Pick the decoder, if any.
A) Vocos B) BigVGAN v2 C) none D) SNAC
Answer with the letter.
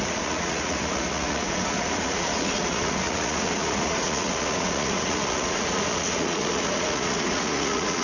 A